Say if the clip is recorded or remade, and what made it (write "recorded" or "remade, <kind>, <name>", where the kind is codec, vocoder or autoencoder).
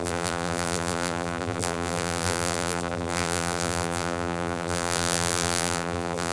remade, vocoder, BigVGAN v2